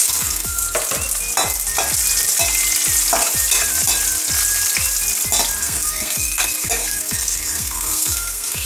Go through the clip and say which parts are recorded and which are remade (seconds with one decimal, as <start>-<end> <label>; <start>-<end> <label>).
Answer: 0.0-0.6 remade; 0.6-5.6 recorded; 5.6-8.7 remade